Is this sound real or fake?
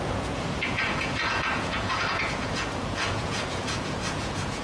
fake